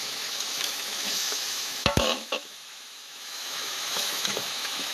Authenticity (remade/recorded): remade